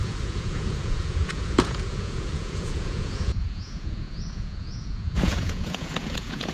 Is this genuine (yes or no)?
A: no